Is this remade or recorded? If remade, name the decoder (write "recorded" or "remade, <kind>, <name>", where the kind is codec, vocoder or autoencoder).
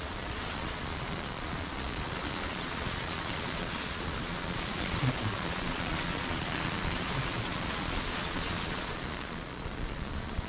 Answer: remade, vocoder, Vocos